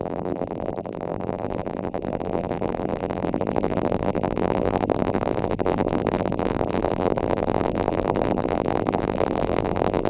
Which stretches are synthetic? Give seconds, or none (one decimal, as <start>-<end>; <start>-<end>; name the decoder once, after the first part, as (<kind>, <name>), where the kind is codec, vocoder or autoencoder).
0.0-10.1 (vocoder, BigVGAN v2)